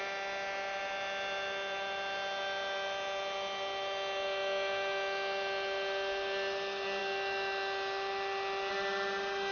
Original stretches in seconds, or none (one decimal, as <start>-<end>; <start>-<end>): 0.0-9.5